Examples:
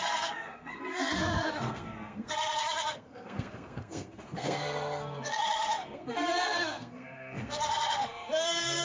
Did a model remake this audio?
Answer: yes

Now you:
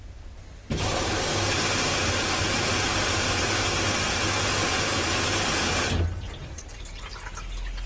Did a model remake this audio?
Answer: no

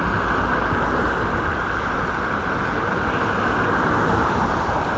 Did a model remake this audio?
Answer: no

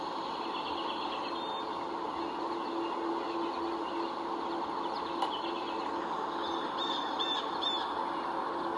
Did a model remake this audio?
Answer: no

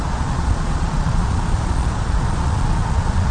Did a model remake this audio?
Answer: yes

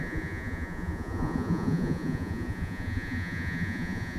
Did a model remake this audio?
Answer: yes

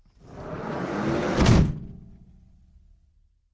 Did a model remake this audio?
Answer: no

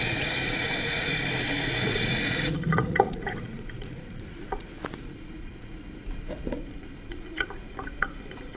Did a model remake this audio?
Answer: yes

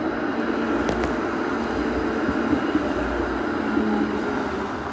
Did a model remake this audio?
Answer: no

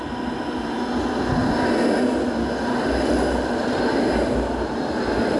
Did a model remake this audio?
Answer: no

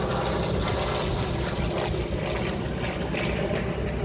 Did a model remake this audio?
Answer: no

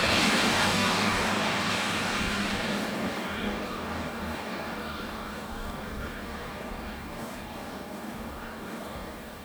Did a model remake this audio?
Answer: yes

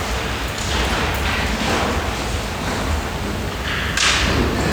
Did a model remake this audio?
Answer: no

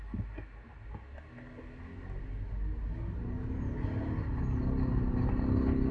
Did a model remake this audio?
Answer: no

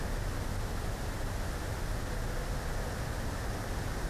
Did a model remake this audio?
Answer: no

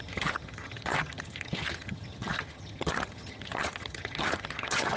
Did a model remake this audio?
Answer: yes